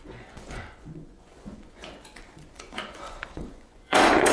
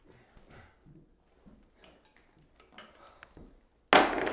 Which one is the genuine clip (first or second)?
second